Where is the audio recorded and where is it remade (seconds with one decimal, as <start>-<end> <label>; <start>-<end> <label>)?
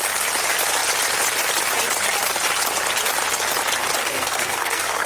0.0-4.0 recorded; 4.0-5.1 remade